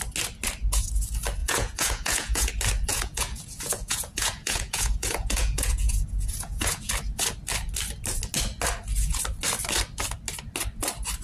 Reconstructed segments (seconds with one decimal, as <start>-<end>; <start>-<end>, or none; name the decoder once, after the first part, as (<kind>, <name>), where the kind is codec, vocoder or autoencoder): 1.4-2.5 (vocoder, Vocos); 2.9-6.9